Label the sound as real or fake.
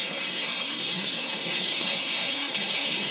fake